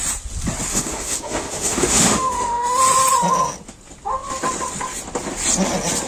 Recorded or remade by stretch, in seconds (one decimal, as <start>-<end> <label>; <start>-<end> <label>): 0.0-0.7 recorded; 0.7-2.8 remade; 2.8-6.1 recorded